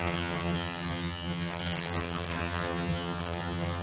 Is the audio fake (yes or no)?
yes